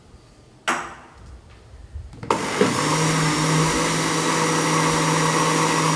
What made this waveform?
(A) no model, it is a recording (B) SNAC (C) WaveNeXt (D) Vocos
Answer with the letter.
A